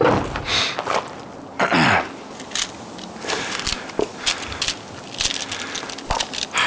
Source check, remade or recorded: recorded